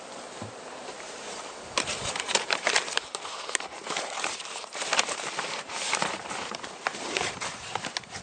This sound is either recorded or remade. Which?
remade